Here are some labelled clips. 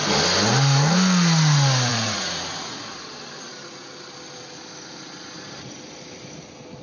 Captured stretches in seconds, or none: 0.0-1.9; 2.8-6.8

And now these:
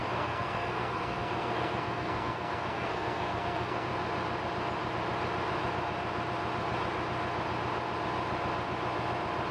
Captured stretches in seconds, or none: 3.9-9.5

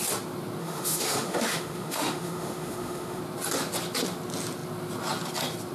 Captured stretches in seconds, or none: 0.0-0.6; 3.2-5.7

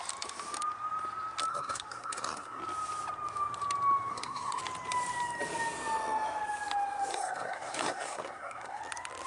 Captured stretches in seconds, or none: 0.0-1.5; 2.6-4.1; 4.6-7.1; 8.8-9.3

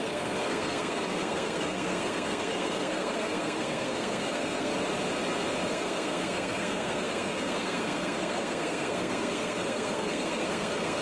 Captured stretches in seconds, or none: 4.7-5.7

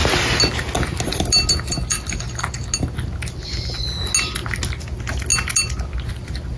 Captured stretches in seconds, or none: 0.0-6.6

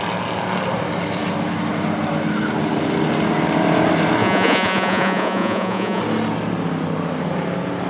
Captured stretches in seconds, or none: 0.0-4.2; 6.0-7.9